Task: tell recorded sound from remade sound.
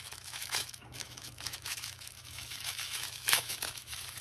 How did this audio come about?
remade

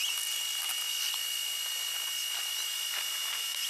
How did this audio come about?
recorded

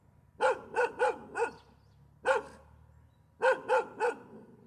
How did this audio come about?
recorded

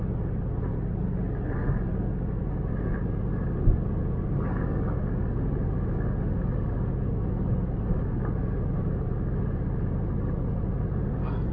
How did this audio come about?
recorded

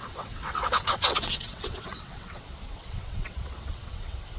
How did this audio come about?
remade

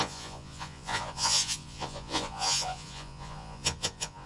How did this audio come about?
remade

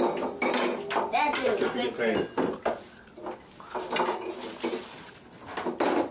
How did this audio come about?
recorded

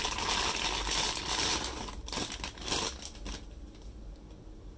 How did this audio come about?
recorded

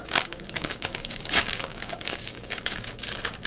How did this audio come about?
remade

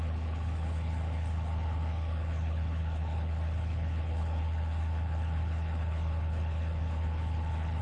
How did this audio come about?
remade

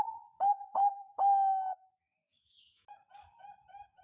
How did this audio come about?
remade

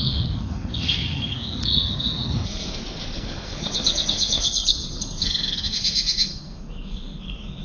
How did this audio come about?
remade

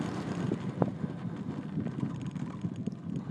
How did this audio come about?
remade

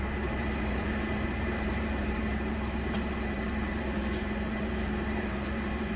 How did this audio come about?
remade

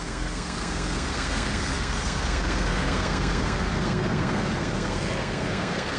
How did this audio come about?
remade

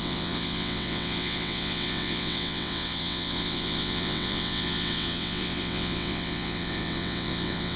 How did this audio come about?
remade